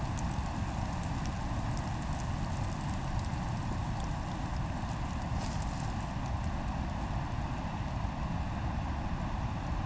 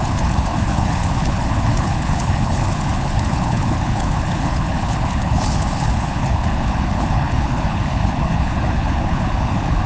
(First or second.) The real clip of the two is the first